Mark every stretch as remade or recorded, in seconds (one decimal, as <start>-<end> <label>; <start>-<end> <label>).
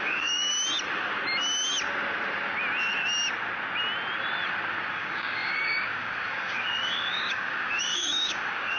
0.0-0.5 remade; 0.5-4.9 recorded; 4.9-8.8 remade